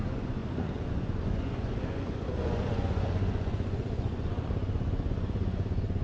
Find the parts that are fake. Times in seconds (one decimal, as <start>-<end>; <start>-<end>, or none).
0.0-6.0